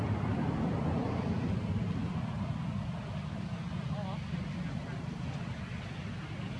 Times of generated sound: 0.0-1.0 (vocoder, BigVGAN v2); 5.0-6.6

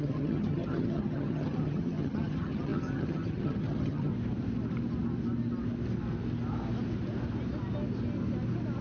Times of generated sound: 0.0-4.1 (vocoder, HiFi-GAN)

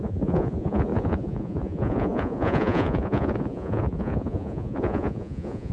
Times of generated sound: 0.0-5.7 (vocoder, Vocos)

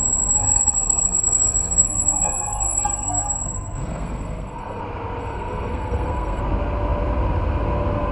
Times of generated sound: 0.4-4.8 (codec, SNAC); 5.2-6.4

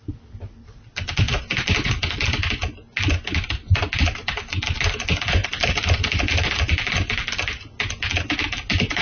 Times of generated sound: 5.4-5.9 (vocoder, BigVGAN v2)